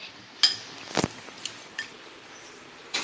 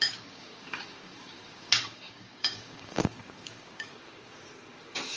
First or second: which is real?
first